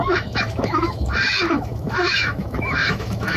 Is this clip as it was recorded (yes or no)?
no